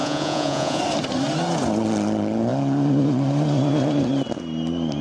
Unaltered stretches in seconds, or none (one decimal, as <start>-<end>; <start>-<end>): 0.8-5.0